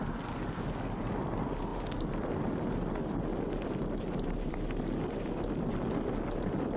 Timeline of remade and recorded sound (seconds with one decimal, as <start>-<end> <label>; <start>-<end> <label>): 0.0-6.8 recorded

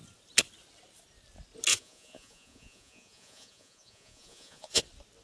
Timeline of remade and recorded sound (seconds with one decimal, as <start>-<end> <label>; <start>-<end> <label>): 0.0-1.7 recorded; 1.7-4.8 remade; 4.8-5.2 recorded

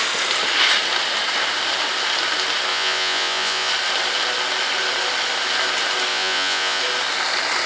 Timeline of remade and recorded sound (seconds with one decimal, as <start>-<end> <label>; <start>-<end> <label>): 0.0-2.7 recorded; 2.7-3.7 remade; 3.7-6.1 recorded; 6.1-6.8 remade; 6.8-7.7 recorded

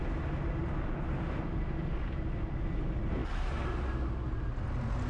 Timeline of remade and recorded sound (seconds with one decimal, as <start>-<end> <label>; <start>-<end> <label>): 0.0-5.1 recorded

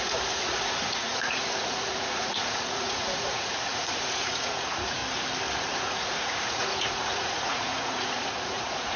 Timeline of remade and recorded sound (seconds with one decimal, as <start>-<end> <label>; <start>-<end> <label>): 0.0-5.0 remade; 5.0-5.6 recorded; 5.6-9.0 remade